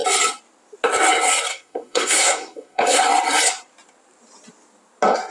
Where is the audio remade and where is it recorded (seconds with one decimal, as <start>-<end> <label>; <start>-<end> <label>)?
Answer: 0.0-1.5 recorded; 1.5-3.0 remade; 3.0-5.3 recorded